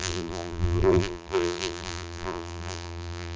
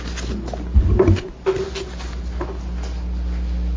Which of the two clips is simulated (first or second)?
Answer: first